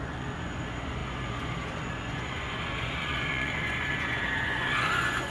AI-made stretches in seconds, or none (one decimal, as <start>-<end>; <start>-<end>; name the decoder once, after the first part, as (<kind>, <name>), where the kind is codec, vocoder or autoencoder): 0.0-5.3 (vocoder, Vocos)